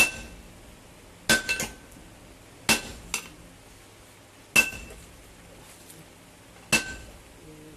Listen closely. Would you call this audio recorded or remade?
recorded